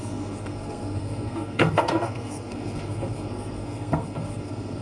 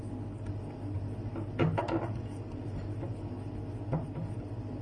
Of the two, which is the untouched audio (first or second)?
second